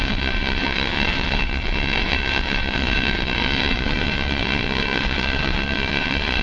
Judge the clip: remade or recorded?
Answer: remade